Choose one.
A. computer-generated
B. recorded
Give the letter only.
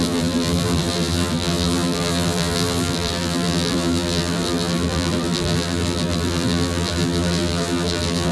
A